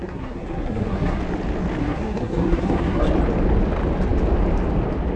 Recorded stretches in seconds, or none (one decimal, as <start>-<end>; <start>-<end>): 1.2-1.8; 3.0-5.2